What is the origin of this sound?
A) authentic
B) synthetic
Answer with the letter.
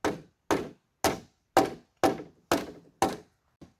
A